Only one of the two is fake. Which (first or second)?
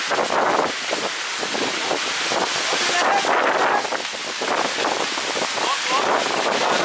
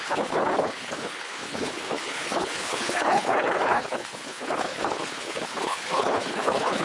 second